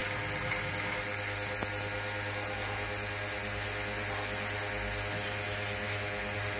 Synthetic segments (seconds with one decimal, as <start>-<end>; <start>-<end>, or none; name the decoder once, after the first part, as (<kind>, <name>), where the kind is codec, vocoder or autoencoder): none